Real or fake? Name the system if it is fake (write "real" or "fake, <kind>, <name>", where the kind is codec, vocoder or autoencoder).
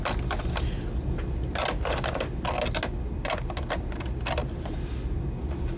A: real